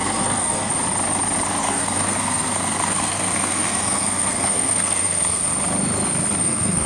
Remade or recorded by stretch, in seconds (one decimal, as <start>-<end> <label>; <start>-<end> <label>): 0.0-0.7 remade; 0.7-1.6 recorded; 1.6-5.4 remade; 5.4-6.4 recorded; 6.4-6.9 remade